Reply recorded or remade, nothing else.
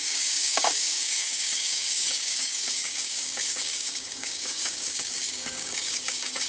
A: remade